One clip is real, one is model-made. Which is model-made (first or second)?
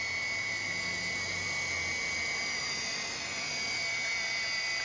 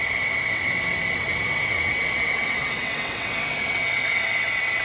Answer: second